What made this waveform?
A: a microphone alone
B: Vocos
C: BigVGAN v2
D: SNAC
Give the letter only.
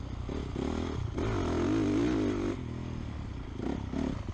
A